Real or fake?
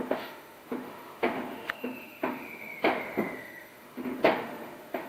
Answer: fake